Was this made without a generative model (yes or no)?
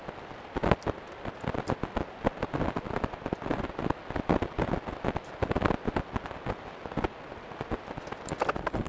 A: yes